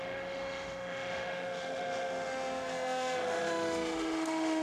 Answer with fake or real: fake